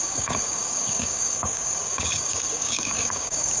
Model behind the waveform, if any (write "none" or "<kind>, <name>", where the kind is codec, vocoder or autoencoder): codec, DAC